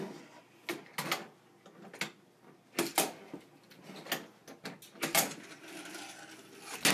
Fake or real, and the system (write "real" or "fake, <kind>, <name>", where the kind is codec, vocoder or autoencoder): real